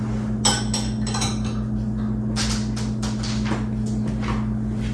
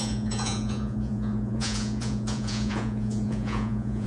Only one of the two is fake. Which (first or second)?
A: second